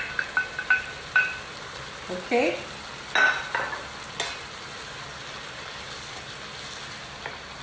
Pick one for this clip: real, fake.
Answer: real